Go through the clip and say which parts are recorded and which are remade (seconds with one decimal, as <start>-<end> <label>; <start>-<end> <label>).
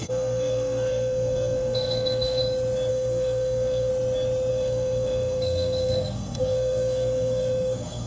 0.0-2.4 remade; 2.4-2.9 recorded; 2.9-3.9 remade; 3.9-4.5 recorded; 4.5-8.1 remade